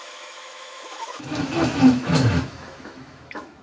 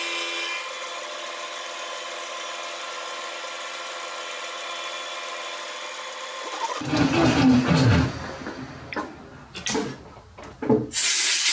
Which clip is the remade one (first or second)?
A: first